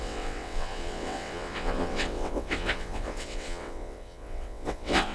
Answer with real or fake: fake